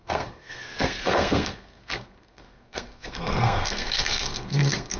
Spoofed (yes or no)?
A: yes